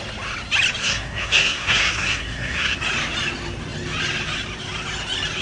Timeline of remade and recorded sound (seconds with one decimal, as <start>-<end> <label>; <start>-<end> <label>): 0.0-0.8 recorded; 0.8-2.8 remade; 2.8-5.4 recorded